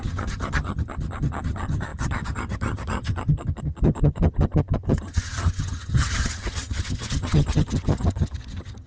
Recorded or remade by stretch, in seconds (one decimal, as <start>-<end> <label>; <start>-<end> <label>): 0.0-8.9 remade